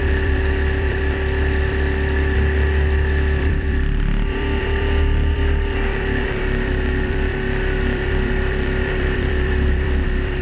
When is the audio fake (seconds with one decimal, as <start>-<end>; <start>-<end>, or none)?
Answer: 0.0-10.4

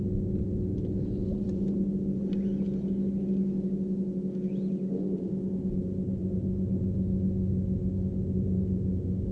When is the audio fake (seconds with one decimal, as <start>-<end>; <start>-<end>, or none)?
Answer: 1.2-1.8

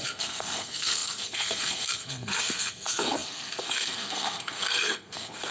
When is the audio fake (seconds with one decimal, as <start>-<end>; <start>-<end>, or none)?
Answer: 0.0-5.5

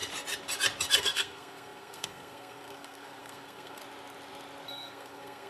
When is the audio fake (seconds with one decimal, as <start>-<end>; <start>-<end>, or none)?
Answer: 1.0-3.8; 4.7-5.5

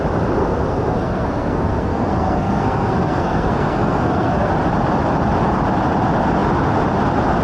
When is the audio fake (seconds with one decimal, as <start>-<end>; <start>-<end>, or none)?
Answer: 0.4-4.5

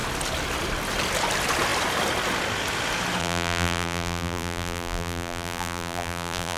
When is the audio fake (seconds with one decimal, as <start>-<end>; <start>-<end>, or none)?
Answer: 3.2-6.6

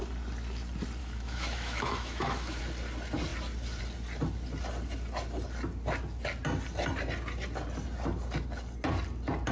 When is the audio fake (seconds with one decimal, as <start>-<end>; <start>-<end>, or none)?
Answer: 1.0-2.6